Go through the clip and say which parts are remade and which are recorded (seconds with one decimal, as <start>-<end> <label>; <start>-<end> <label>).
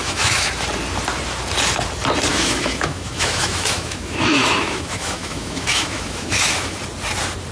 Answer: 0.0-0.5 remade; 0.5-2.3 recorded; 2.3-6.8 remade; 6.8-7.5 recorded